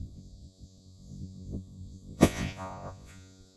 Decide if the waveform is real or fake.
fake